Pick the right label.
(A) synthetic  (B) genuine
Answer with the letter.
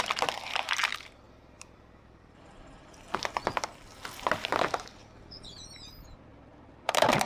A